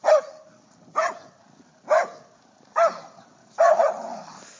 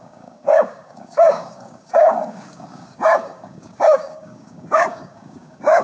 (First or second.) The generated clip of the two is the second